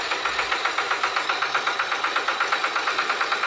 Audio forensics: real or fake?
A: real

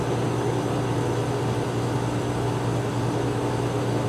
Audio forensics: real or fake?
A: real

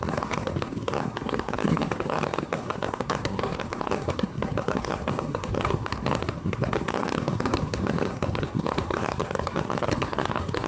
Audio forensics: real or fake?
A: fake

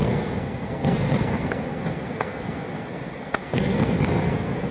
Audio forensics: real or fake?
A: fake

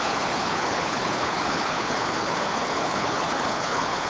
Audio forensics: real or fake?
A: fake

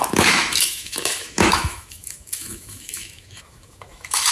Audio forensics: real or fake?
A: fake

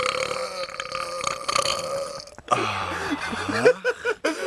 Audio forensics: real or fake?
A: real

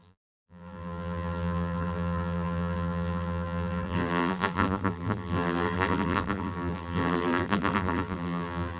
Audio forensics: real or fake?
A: fake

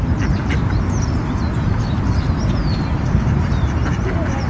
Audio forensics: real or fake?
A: fake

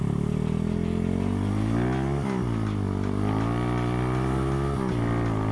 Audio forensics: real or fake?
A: real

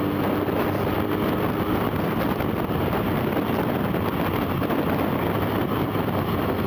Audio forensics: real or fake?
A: real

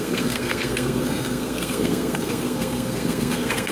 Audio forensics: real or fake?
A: fake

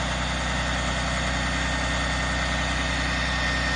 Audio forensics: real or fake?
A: real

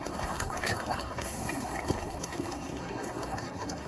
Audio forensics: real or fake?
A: fake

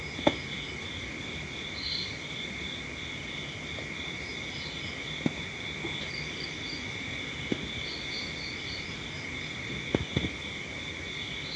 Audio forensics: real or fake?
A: real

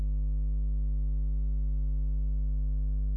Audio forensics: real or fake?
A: real